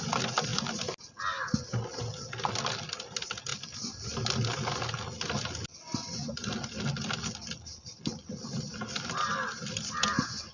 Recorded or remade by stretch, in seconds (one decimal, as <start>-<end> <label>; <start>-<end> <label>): 0.0-10.5 recorded